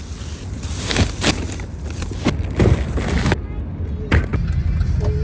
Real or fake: real